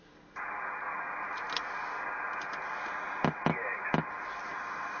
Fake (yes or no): no